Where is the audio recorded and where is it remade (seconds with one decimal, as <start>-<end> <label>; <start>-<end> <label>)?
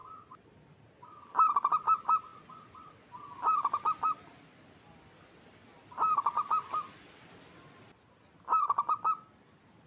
0.0-9.9 recorded